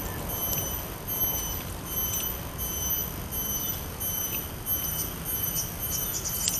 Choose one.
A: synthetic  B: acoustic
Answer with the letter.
B